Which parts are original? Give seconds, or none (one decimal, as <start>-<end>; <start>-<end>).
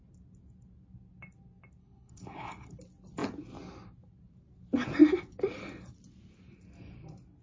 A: 0.0-1.8; 2.8-7.4